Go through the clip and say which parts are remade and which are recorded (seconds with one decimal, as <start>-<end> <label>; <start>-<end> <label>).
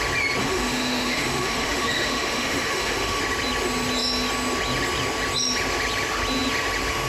0.0-0.4 recorded; 0.4-3.2 remade; 3.2-7.1 recorded